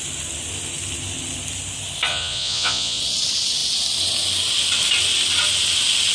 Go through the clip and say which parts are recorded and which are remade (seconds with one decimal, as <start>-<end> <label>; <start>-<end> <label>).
0.0-2.1 recorded; 2.1-3.0 remade; 3.0-6.1 recorded

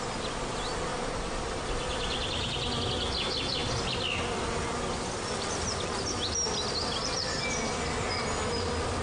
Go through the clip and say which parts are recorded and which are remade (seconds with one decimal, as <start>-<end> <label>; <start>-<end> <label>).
0.0-0.9 recorded; 0.9-1.6 remade; 1.6-9.0 recorded